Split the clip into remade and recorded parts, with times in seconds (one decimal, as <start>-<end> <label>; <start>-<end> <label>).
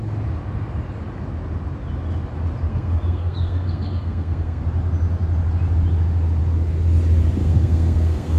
0.0-2.7 recorded; 2.7-4.6 remade; 4.6-7.4 recorded; 7.4-8.4 remade